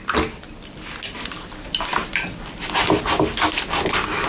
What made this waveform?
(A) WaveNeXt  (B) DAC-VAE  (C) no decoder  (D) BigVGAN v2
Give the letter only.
C